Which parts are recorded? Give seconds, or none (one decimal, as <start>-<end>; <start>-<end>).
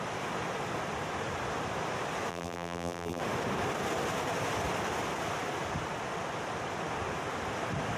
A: 0.0-2.3; 3.2-8.0